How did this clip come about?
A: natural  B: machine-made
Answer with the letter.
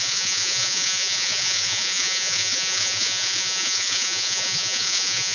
B